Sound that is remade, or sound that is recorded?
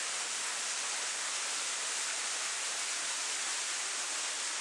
recorded